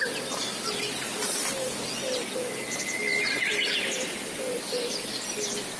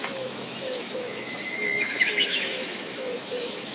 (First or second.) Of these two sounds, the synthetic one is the second